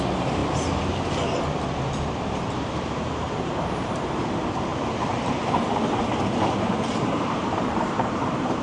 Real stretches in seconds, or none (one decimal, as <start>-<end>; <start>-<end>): 0.4-2.1; 4.7-6.0